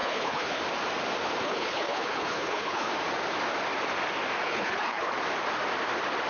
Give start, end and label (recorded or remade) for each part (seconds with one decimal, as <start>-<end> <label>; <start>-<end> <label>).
0.0-0.6 remade; 0.6-1.4 recorded; 1.4-2.9 remade; 2.9-4.4 recorded; 4.4-5.1 remade; 5.1-6.3 recorded